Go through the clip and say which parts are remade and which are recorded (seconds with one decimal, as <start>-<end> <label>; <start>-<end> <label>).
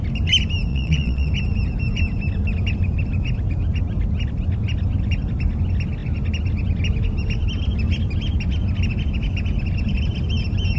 0.0-0.7 recorded; 0.7-1.3 remade; 1.3-10.8 recorded